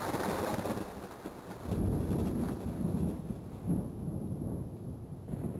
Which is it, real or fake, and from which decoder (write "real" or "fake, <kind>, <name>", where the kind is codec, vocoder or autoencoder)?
real